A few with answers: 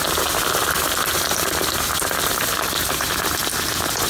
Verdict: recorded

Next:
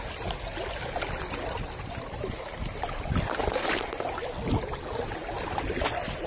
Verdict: recorded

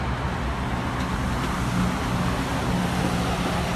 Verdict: recorded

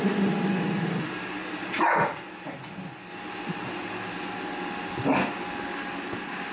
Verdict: recorded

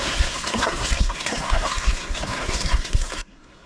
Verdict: remade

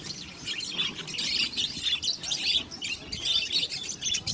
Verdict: recorded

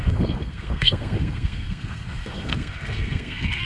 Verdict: remade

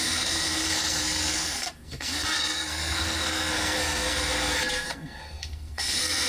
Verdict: remade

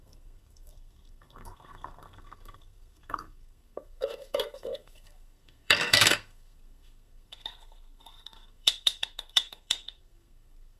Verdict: remade